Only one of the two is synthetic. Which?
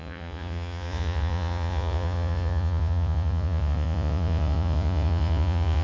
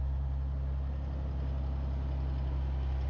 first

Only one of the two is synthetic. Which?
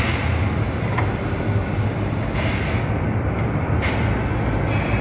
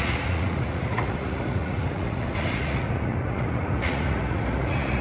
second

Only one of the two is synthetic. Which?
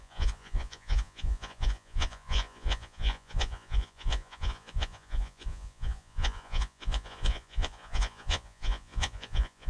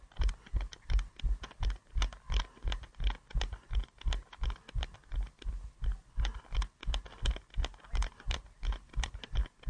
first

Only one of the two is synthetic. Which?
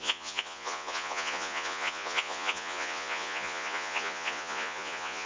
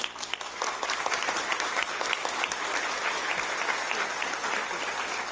first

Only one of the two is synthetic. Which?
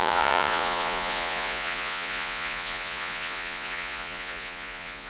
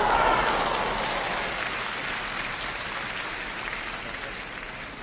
first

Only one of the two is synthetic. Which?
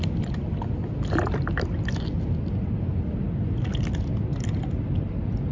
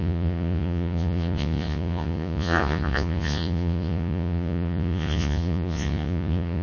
second